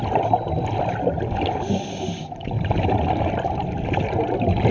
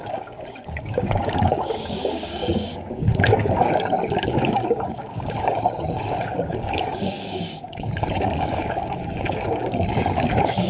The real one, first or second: first